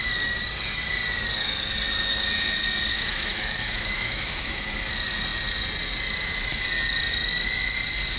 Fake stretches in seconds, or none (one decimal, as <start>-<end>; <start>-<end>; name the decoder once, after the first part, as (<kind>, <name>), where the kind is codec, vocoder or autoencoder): 2.9-4.7 (autoencoder, DAC-VAE)